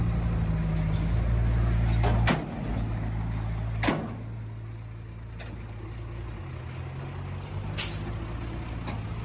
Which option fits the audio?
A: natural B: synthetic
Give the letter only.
A